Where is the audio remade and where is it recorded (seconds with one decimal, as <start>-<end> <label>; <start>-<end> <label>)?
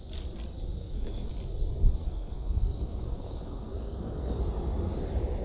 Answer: 0.0-0.8 recorded; 0.8-1.3 remade; 1.3-2.0 recorded; 2.0-4.4 remade; 4.4-5.4 recorded